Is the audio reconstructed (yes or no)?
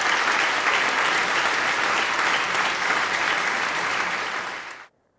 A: no